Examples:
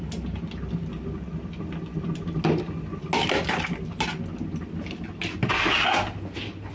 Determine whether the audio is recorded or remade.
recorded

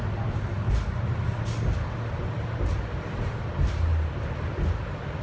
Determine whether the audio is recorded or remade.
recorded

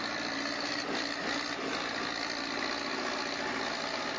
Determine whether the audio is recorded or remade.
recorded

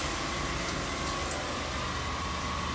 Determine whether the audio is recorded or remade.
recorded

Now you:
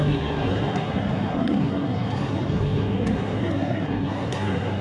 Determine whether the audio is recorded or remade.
remade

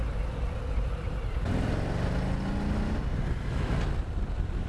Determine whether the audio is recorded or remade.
recorded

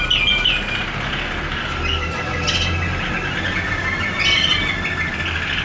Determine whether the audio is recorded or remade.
recorded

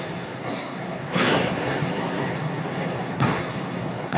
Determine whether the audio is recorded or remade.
remade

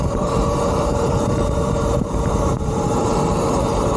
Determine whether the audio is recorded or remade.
remade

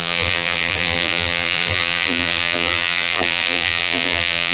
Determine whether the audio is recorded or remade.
remade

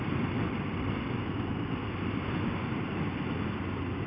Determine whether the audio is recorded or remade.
recorded